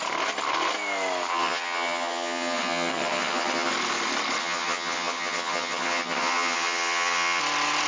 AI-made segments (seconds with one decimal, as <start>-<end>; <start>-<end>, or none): 1.3-3.7; 4.4-7.4